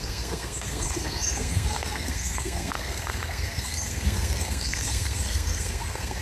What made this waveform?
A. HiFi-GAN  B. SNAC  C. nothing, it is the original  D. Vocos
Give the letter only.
B